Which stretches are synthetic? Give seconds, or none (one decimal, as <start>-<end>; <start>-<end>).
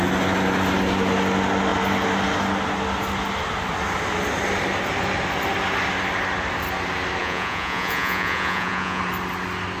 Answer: 7.2-9.0